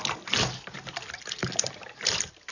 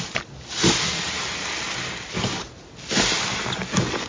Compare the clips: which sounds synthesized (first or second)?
first